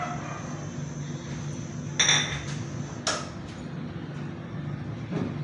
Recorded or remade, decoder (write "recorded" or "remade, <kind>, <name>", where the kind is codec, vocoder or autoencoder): recorded